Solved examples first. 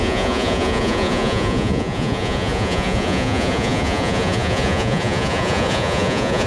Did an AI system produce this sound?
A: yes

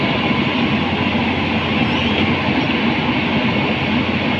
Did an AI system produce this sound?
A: no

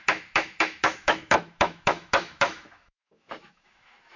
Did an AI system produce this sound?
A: yes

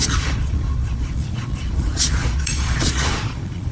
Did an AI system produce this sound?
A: yes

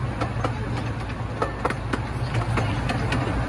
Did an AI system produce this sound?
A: no